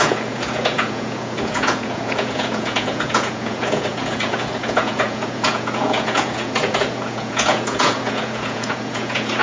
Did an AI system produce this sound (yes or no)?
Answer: yes